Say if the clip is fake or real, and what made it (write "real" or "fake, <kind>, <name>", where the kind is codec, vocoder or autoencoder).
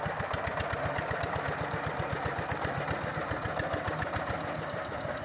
real